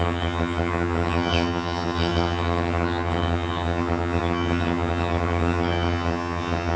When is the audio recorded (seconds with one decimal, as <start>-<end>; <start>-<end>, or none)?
none